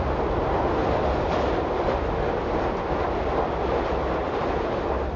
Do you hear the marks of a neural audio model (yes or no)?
no